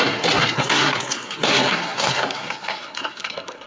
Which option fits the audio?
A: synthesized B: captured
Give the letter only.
A